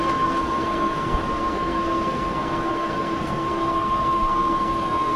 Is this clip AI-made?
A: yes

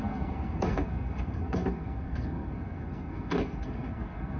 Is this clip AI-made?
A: yes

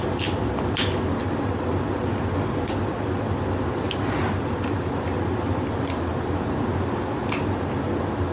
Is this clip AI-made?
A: no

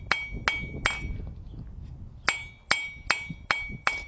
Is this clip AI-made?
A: no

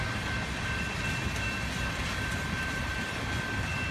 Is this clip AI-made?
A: no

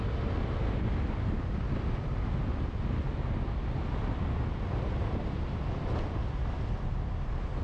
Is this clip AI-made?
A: no